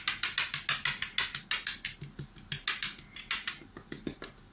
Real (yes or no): yes